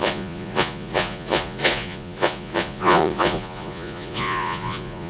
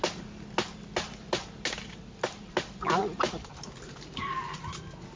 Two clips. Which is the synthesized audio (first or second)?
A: first